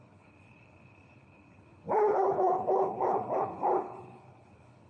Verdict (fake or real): fake